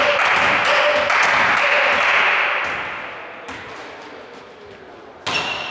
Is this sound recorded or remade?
recorded